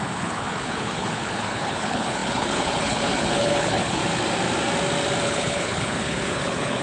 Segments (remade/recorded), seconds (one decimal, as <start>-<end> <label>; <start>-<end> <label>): 0.0-4.0 remade; 4.0-5.2 recorded; 5.2-6.8 remade